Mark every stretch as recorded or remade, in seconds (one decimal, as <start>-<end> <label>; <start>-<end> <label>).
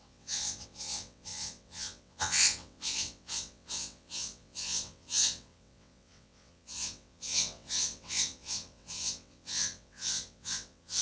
0.0-11.0 remade